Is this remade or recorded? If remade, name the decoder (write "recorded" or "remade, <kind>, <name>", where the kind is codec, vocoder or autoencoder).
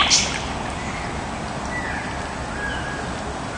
recorded